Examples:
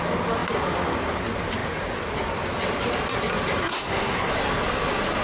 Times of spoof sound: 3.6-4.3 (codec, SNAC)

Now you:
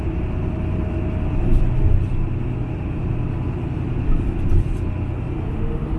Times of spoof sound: none

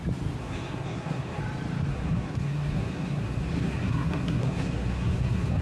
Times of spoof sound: 0.4-1.4 (codec, SNAC); 1.9-5.6

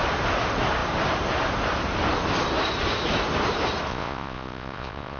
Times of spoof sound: 3.9-5.2 (vocoder, Vocos)